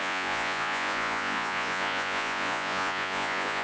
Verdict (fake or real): fake